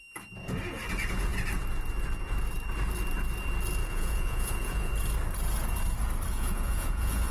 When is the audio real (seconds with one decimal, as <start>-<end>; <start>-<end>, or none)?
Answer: 0.0-3.8; 4.9-6.3